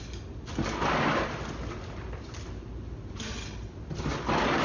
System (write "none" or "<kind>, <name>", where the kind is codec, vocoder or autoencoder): none